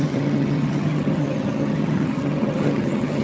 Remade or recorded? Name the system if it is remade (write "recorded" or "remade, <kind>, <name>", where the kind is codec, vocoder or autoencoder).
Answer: remade, vocoder, HiFi-GAN